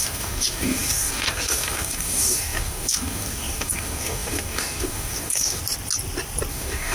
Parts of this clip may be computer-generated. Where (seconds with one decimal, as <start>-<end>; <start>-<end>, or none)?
0.0-5.6; 6.5-6.9